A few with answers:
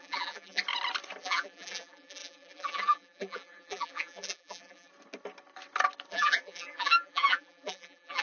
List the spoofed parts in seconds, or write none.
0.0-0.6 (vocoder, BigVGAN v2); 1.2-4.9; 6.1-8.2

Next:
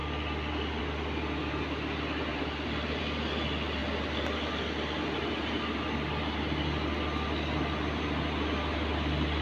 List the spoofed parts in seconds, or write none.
2.3-3.0 (vocoder, BigVGAN v2)

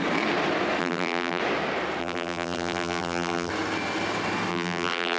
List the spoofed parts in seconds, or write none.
0.8-1.4 (vocoder, BigVGAN v2); 2.0-3.5; 4.5-5.2

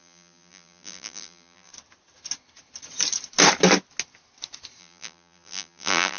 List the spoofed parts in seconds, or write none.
0.0-1.7 (vocoder, BigVGAN v2); 4.8-6.2

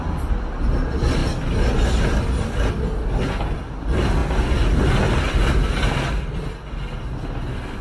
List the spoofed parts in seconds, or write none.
none